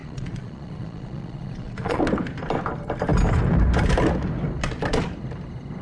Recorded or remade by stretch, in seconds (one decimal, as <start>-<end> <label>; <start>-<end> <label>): 0.0-2.0 remade; 2.0-5.8 recorded